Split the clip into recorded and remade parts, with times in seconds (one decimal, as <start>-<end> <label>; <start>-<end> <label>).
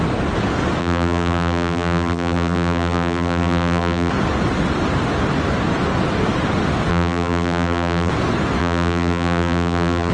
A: 0.0-0.8 recorded; 0.8-4.1 remade; 4.1-6.9 recorded; 6.9-8.1 remade; 8.1-8.6 recorded; 8.6-10.1 remade